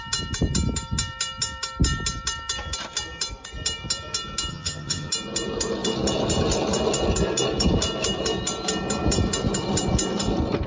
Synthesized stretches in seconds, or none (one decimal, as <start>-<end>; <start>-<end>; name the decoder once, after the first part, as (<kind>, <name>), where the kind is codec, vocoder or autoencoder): 4.5-5.1 (vocoder, HiFi-GAN)